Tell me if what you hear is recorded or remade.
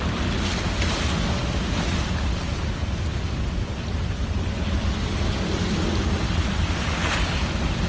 recorded